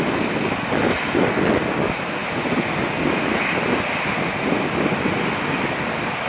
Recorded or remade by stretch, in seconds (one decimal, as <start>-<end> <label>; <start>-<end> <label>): 0.0-6.3 recorded